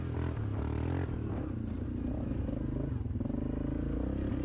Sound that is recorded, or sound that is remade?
recorded